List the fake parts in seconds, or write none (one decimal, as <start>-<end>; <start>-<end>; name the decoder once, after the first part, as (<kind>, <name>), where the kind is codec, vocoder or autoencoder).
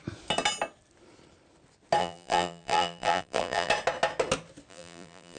2.0-3.7 (vocoder, BigVGAN v2); 4.7-5.4